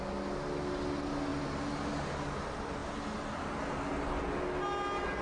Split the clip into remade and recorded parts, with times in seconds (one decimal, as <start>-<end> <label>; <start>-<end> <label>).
0.0-5.2 recorded